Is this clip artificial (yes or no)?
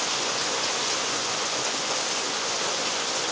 yes